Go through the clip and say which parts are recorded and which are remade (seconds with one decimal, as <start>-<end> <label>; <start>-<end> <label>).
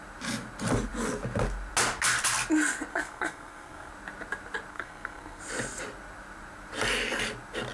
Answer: 0.0-2.9 recorded; 2.9-3.9 remade; 3.9-4.7 recorded; 4.7-5.4 remade; 5.4-7.7 recorded